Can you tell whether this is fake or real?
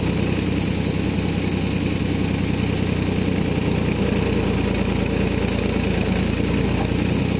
real